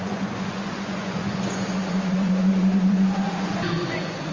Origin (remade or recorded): remade